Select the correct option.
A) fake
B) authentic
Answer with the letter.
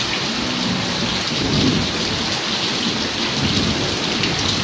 B